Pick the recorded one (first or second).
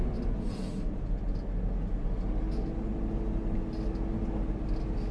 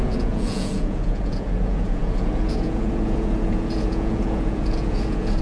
first